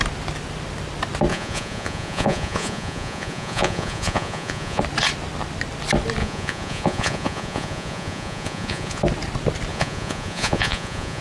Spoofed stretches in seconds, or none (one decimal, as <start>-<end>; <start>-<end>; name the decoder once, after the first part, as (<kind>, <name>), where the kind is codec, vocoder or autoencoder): 1.3-4.8 (vocoder, Vocos); 6.2-9.0; 9.7-11.2